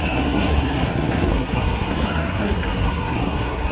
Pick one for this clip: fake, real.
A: fake